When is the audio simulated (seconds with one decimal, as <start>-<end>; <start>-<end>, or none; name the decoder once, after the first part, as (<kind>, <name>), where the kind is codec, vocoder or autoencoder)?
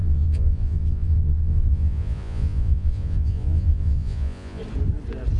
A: 0.0-4.6 (vocoder, Vocos)